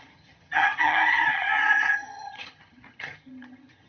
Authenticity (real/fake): fake